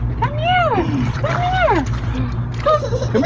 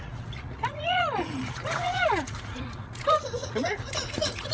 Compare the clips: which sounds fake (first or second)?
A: second